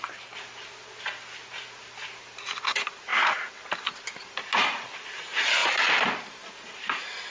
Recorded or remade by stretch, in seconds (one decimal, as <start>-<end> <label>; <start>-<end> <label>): 0.0-3.1 recorded; 3.1-3.7 remade; 3.7-5.6 recorded; 5.6-6.2 remade; 6.2-7.3 recorded